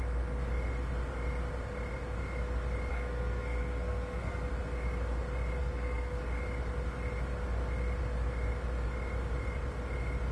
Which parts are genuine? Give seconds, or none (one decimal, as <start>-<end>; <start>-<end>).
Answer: 0.0-2.9; 4.5-5.6; 6.2-10.3